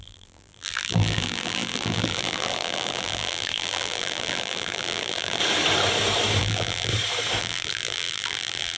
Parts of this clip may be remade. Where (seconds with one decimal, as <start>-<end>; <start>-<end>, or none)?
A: 0.0-5.4; 6.4-6.9; 7.4-8.8